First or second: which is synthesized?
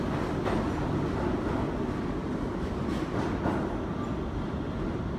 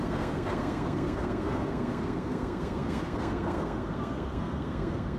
second